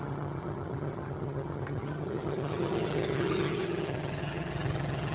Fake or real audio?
fake